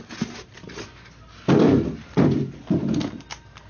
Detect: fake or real real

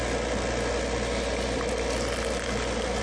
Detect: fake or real real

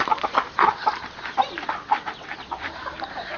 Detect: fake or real fake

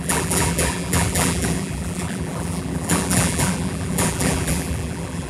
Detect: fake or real fake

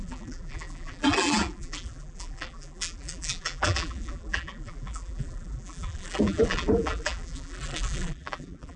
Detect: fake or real fake